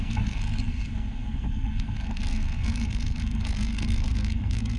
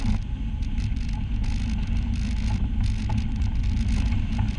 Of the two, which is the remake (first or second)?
first